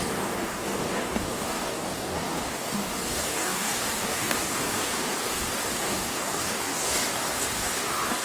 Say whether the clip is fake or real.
fake